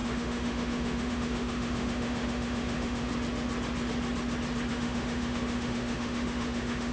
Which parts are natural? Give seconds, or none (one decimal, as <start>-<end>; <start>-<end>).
3.1-4.7